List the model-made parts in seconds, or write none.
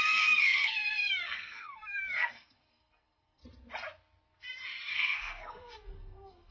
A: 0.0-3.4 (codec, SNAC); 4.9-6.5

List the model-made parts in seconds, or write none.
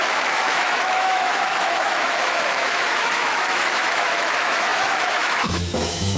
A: 0.0-6.2 (autoencoder, DAC-VAE)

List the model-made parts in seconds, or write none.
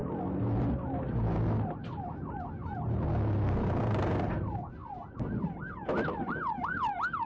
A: 4.3-7.3 (vocoder, BigVGAN v2)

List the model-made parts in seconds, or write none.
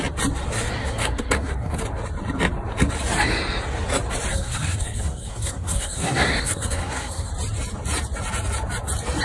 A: 0.8-1.8 (codec, SNAC); 4.3-7.3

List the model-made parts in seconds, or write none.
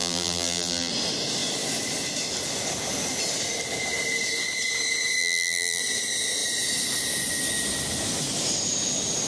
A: 0.0-0.9 (vocoder, BigVGAN v2); 5.2-5.8